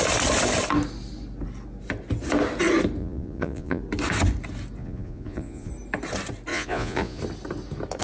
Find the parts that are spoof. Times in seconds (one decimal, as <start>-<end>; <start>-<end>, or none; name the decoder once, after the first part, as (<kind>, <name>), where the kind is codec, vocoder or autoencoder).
3.0-3.8 (vocoder, Vocos); 4.8-5.7; 6.5-7.2